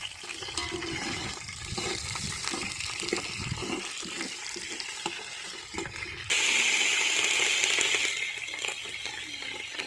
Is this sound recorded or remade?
recorded